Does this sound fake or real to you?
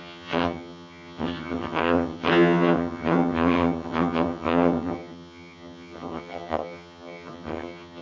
fake